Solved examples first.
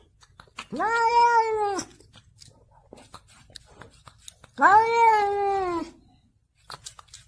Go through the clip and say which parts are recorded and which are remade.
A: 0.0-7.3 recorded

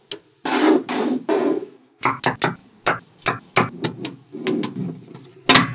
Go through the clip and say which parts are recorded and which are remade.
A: 0.0-1.6 recorded; 1.6-2.2 remade; 2.2-5.7 recorded